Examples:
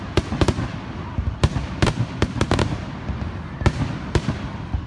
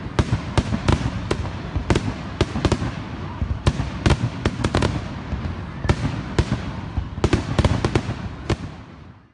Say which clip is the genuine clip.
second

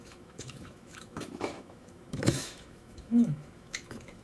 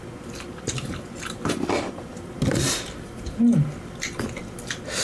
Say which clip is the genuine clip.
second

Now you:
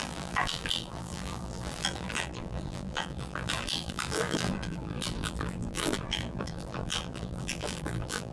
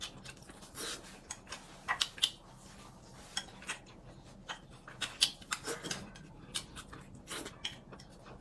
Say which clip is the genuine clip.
second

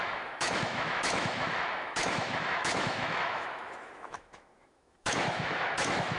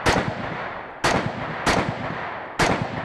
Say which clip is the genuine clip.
second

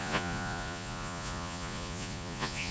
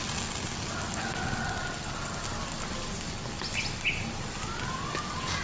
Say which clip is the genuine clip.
second